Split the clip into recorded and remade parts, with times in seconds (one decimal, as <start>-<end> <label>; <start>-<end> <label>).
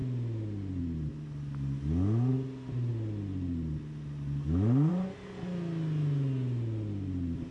0.0-7.5 recorded